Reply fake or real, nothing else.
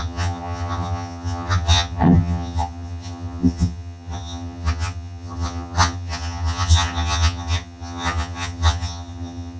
fake